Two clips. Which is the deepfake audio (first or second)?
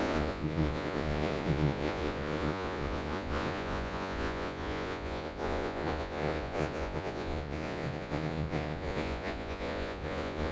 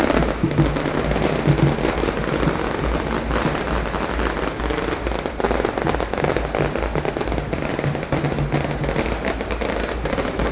first